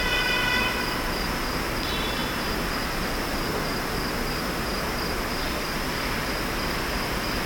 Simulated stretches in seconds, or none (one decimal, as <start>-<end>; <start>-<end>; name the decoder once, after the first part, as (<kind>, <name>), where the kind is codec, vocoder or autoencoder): none

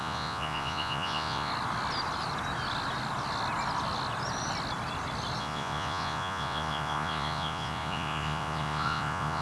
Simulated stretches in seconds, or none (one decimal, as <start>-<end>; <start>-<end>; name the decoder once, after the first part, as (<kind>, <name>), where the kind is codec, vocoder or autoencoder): 0.0-1.5 (vocoder, Vocos); 5.4-9.4

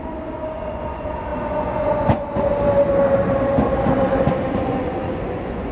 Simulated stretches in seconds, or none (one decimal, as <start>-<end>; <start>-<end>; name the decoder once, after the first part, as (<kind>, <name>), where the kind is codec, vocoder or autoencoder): 0.0-2.5 (vocoder, Vocos); 4.5-5.7

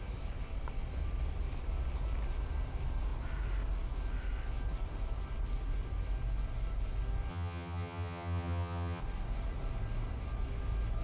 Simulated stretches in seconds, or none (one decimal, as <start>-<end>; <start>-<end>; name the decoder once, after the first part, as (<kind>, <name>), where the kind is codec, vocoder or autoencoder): 7.3-9.0 (vocoder, HiFi-GAN)

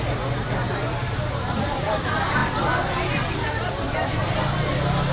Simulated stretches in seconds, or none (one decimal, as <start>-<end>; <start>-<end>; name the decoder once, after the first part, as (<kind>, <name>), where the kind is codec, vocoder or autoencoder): none

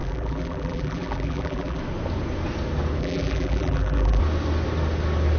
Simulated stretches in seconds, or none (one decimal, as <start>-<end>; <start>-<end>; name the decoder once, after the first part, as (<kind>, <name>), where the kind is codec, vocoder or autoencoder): 0.0-1.8 (vocoder, BigVGAN v2); 3.0-4.2

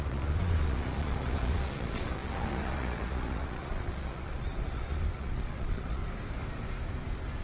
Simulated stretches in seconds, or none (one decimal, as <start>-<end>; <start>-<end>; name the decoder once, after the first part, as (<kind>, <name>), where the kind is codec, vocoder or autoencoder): 0.0-6.0 (vocoder, Vocos)

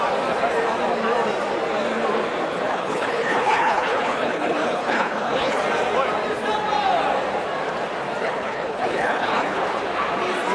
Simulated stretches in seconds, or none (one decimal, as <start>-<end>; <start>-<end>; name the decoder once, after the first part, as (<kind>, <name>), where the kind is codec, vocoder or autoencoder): 2.7-5.6 (codec, HILCodec); 8.2-9.8